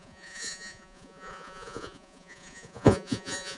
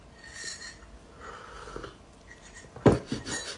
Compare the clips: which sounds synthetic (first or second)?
first